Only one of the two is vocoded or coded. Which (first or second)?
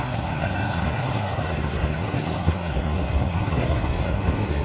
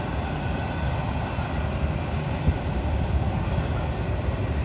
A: first